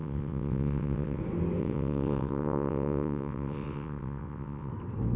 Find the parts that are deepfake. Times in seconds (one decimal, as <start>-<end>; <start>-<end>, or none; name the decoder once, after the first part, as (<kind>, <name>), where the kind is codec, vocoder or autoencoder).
0.0-1.2 (vocoder, WaveNeXt); 1.6-4.7